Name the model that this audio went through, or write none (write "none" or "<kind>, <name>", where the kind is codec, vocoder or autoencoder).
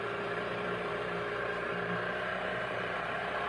vocoder, BigVGAN v2